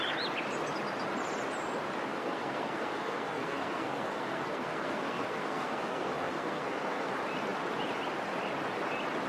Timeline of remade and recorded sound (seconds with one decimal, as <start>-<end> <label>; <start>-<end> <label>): 0.0-2.1 recorded; 2.1-7.1 remade; 7.1-9.3 recorded

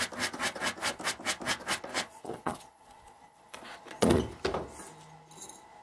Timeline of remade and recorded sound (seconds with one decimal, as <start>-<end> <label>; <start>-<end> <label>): 0.0-1.9 recorded; 1.9-4.2 remade; 4.2-5.8 recorded